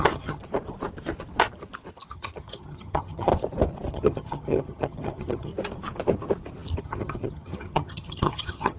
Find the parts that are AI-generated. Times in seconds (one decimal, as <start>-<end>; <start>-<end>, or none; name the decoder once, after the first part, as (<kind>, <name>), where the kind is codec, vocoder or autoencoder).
0.0-0.4 (vocoder, HiFi-GAN); 2.1-3.3; 3.9-5.5; 6.8-8.8